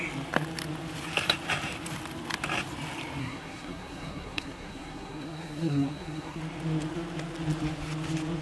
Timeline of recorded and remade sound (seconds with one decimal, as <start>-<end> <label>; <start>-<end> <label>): 0.0-3.2 recorded; 3.2-6.4 remade; 6.4-8.4 recorded